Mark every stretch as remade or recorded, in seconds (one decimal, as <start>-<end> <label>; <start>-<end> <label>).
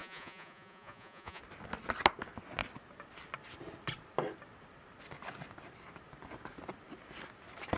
0.0-1.4 remade; 1.4-7.8 recorded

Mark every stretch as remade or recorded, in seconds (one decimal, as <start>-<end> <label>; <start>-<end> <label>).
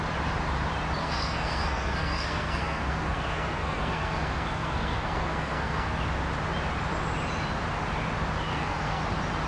0.0-1.0 recorded; 1.0-6.0 remade; 6.0-8.5 recorded; 8.5-9.0 remade; 9.0-9.5 recorded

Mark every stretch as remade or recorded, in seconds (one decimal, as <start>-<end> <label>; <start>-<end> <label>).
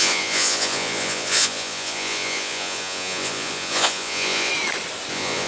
0.0-4.5 remade; 4.5-5.1 recorded; 5.1-5.5 remade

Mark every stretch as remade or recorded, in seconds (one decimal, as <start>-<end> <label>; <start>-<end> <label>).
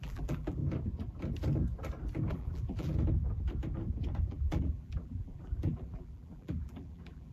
0.0-0.6 remade; 0.6-2.3 recorded; 2.3-2.9 remade; 2.9-4.2 recorded; 4.2-7.3 remade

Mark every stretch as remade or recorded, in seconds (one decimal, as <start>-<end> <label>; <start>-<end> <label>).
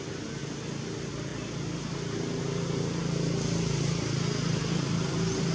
0.0-5.5 recorded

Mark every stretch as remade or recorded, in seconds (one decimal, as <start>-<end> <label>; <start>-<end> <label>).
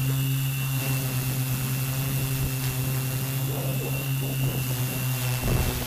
0.0-5.9 recorded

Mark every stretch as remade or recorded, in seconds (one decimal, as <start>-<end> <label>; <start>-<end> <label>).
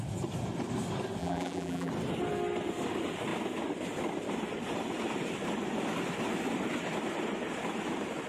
0.0-1.2 recorded; 1.2-1.9 remade; 1.9-8.3 recorded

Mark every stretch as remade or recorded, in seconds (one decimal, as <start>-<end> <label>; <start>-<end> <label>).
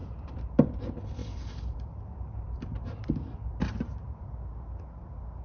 0.0-0.7 remade; 0.7-1.2 recorded; 1.2-4.2 remade; 4.2-5.4 recorded